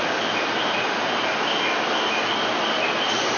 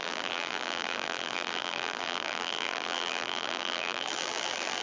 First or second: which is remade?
second